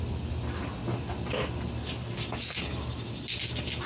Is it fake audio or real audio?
real